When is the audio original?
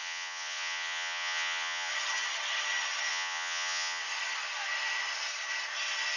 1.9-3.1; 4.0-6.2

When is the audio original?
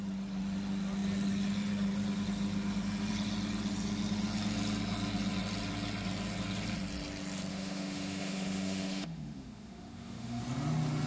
0.0-7.5; 10.4-11.1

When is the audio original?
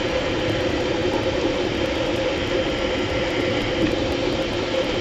0.0-5.0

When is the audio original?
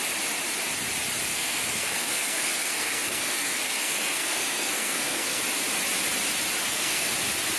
0.0-1.3; 5.4-6.6; 7.1-7.6